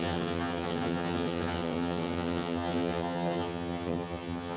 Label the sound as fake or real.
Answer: fake